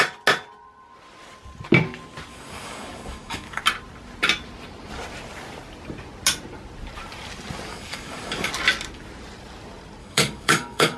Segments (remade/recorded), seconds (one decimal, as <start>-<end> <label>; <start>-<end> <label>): 0.0-2.3 recorded; 2.3-3.6 remade; 3.6-7.7 recorded; 7.7-8.5 remade; 8.5-10.0 recorded; 10.0-11.0 remade